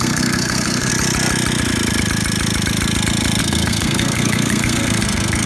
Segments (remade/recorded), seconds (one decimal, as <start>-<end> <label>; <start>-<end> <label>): 0.0-0.9 remade; 0.9-3.4 recorded; 3.4-5.5 remade